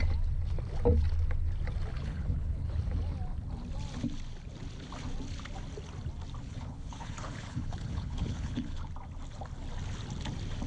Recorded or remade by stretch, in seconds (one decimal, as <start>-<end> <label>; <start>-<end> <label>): 0.0-1.9 recorded; 1.9-2.8 remade; 2.8-6.5 recorded; 6.5-8.9 remade; 8.9-10.7 recorded